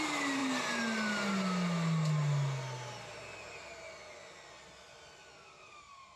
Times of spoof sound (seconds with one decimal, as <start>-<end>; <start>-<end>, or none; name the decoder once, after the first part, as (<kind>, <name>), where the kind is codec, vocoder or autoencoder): none

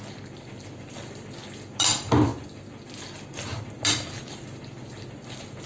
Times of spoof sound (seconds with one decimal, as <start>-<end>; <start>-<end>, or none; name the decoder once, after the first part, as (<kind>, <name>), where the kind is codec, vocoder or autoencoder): none

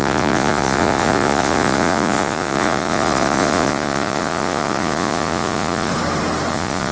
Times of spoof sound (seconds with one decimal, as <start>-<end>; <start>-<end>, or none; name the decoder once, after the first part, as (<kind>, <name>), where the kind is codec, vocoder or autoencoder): 0.0-5.9 (vocoder, Vocos); 6.5-6.9

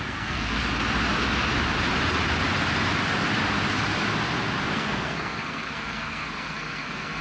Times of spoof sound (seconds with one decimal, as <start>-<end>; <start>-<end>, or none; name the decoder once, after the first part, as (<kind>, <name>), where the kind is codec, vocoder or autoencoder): 0.0-0.6 (codec, SNAC); 4.7-7.2